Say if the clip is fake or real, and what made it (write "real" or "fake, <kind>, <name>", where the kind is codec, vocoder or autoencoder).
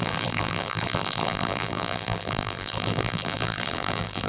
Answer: fake, vocoder, BigVGAN v2